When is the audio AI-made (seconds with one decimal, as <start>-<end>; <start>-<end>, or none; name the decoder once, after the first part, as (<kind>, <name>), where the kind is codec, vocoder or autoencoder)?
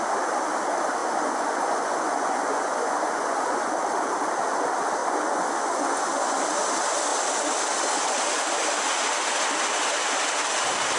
1.0-3.7 (vocoder, Vocos); 5.0-6.4